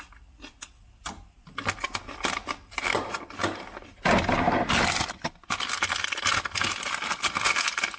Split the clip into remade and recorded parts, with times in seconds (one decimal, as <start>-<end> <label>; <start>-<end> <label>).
0.0-2.4 recorded; 2.4-3.1 remade; 3.1-8.0 recorded